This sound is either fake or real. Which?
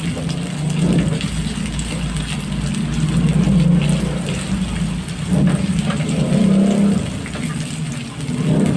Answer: real